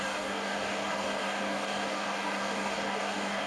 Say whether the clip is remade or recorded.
remade